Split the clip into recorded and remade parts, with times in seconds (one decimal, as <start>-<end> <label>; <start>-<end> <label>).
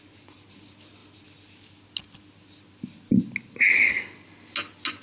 0.0-5.0 recorded